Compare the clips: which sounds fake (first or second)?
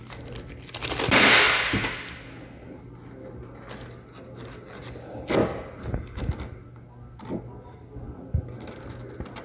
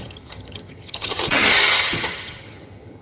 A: second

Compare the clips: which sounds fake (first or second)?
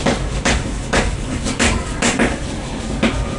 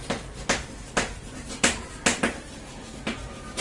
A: first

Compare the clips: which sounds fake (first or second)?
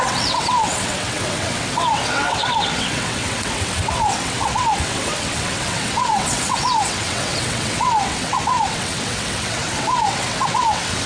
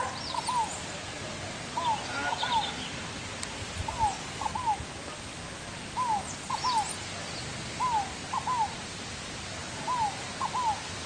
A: first